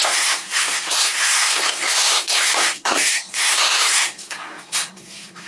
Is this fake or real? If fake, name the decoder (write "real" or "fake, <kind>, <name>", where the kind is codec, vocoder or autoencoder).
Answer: fake, codec, SNAC